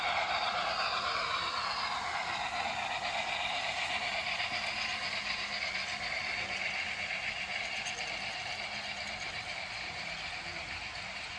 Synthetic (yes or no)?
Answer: no